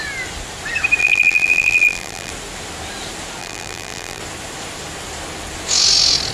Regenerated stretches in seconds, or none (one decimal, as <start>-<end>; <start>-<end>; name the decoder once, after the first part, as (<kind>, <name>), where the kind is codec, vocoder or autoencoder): 1.0-2.3 (vocoder, BigVGAN v2); 3.4-4.2